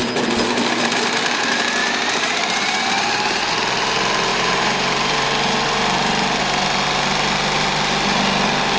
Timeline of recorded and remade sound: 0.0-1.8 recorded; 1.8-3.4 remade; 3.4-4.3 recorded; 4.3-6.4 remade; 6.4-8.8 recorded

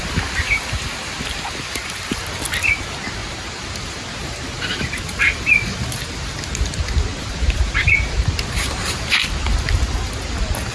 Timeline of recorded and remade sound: 0.0-3.2 recorded; 3.2-4.8 remade; 4.8-7.1 recorded; 7.1-9.2 remade; 9.2-10.7 recorded

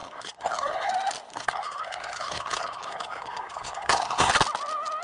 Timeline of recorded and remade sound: 0.0-0.9 remade; 0.9-1.3 recorded; 1.3-4.3 remade; 4.3-5.0 recorded

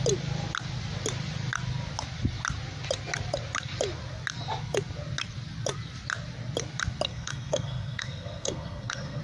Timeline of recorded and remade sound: 0.0-7.1 recorded; 7.1-9.2 remade